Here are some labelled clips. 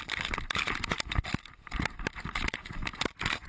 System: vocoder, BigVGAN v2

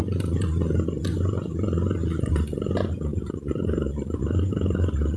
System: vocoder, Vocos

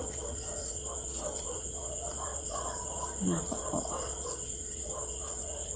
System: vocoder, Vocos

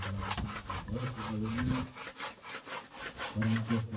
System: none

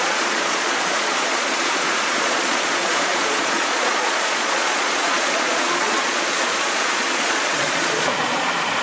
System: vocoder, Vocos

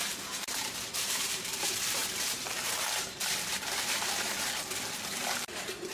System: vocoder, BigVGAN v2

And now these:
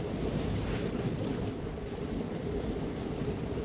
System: none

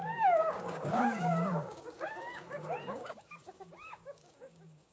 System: codec, DAC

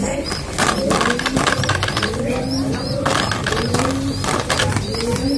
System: none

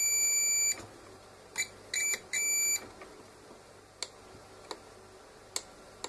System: none